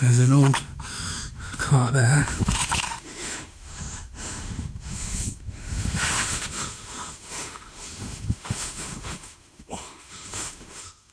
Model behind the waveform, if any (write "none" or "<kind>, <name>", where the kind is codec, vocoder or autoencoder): autoencoder, DAC-VAE